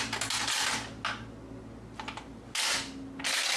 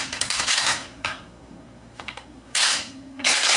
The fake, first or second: second